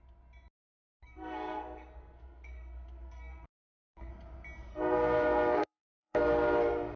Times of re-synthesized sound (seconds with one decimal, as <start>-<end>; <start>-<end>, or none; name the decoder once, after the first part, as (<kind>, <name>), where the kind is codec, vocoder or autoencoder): 0.9-4.1 (codec, SNAC); 4.7-6.2

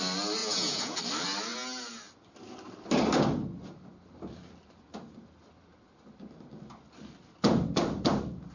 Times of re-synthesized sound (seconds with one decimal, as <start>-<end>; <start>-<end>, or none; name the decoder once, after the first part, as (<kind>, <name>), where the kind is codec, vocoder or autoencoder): 0.4-1.0 (vocoder, Vocos)